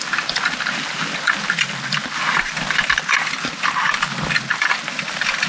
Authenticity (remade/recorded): recorded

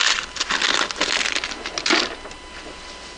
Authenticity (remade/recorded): recorded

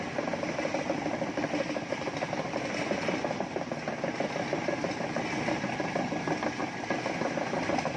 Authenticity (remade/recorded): recorded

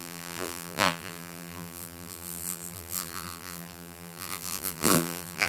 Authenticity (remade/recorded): remade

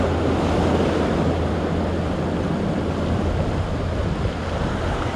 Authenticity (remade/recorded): recorded